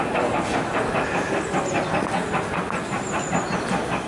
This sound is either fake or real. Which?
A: real